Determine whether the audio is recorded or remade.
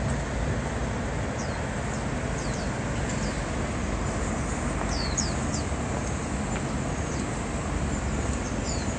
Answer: recorded